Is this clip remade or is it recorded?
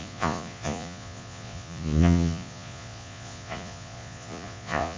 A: remade